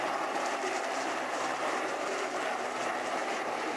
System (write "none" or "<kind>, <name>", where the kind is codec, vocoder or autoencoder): vocoder, BigVGAN v2